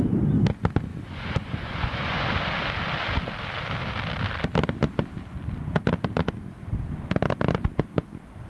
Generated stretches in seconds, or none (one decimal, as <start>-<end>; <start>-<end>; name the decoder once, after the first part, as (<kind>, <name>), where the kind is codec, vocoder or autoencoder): 0.9-2.2 (vocoder, Vocos)